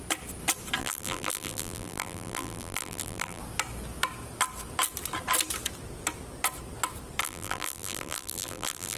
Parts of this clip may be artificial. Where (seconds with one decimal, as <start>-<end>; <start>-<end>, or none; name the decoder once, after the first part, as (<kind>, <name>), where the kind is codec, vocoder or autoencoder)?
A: 0.8-3.4 (vocoder, BigVGAN v2); 7.2-9.0